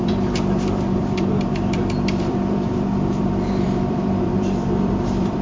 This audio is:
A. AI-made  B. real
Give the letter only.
A